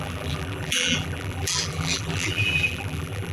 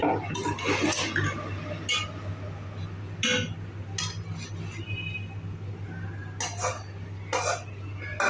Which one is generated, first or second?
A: first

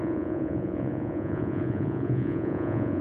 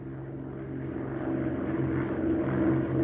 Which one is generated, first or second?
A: first